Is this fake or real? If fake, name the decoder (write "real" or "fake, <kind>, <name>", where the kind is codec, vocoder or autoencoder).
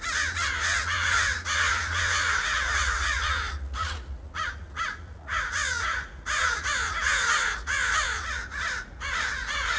fake, vocoder, Vocos